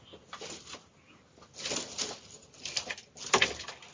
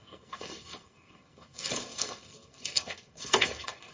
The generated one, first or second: second